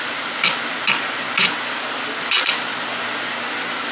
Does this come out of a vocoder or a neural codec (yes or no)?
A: no